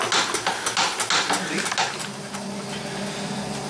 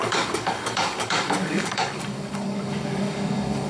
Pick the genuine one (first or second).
first